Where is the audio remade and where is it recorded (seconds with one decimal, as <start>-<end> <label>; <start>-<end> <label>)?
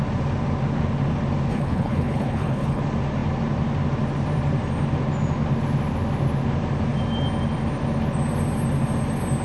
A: 0.0-1.5 recorded; 1.5-2.8 remade; 2.8-9.4 recorded